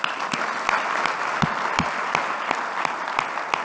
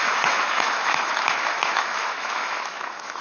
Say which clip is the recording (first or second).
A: first